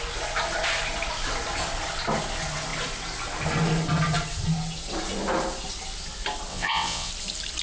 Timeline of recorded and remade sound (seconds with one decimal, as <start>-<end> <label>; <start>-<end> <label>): 0.0-6.5 recorded; 6.5-7.1 remade; 7.1-7.6 recorded